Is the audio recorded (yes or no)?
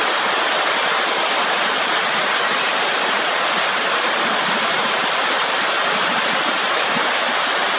yes